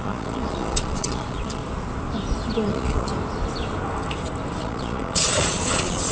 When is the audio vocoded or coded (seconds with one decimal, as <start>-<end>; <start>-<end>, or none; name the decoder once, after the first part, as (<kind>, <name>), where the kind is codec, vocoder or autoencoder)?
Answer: 0.0-1.6 (vocoder, Vocos); 2.7-3.1; 4.6-6.1